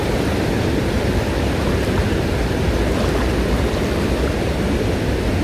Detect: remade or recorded recorded